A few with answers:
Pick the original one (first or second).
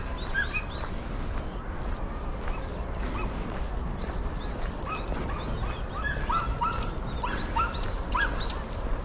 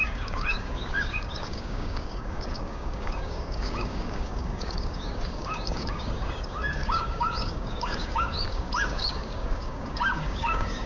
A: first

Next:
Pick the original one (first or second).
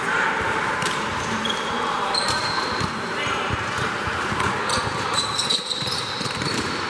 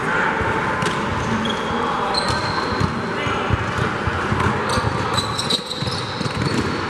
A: second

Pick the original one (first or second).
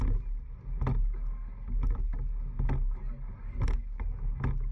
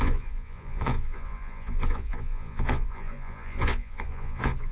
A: first